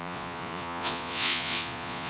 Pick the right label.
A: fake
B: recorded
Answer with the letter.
A